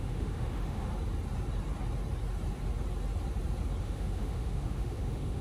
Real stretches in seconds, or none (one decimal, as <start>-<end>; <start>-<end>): 0.9-3.8